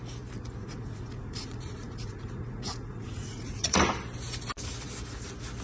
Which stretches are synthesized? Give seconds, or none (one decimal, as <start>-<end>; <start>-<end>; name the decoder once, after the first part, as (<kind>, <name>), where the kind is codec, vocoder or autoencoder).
0.6-3.8 (vocoder, Vocos)